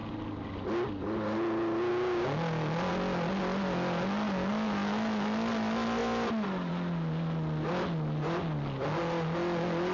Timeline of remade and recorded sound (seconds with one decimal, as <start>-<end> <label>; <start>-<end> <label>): 0.0-9.9 recorded